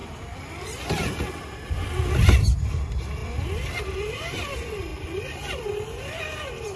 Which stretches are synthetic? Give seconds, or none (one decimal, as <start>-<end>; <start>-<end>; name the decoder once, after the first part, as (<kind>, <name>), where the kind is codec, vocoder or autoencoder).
0.0-0.6 (vocoder, BigVGAN v2); 3.2-3.8; 4.9-6.2